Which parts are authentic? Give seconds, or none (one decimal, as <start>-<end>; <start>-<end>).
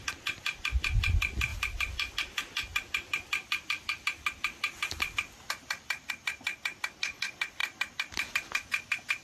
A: 0.0-1.5; 6.1-9.2